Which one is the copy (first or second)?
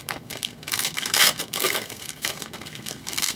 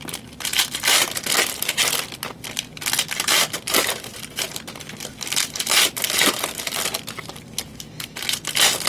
first